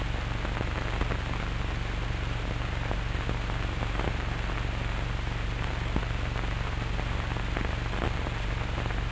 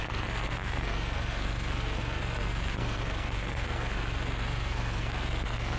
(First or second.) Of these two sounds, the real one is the first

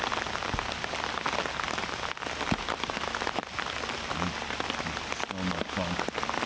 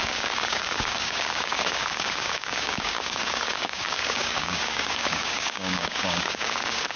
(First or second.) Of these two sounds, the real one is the first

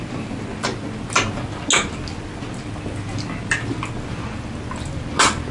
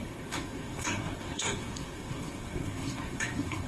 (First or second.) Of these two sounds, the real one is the first